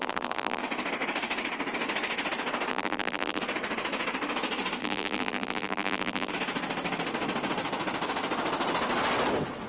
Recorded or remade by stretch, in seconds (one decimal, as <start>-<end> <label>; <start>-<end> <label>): 0.0-0.6 remade; 0.6-2.7 recorded; 2.7-3.4 remade; 3.4-4.8 recorded; 4.8-6.3 remade; 6.3-9.7 recorded